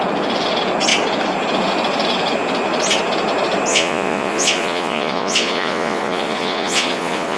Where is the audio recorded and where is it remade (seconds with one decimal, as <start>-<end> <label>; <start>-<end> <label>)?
0.0-3.7 recorded; 3.7-7.4 remade